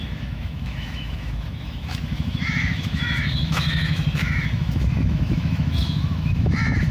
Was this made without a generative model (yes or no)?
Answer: no